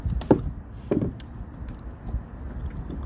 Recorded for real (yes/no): yes